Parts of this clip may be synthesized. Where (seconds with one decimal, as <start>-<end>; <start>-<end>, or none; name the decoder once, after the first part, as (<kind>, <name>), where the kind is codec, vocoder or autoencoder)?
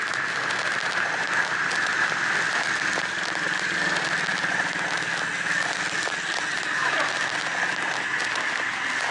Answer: 6.5-7.2 (vocoder, BigVGAN v2)